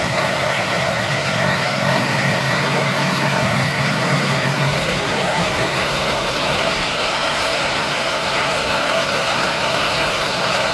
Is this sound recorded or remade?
remade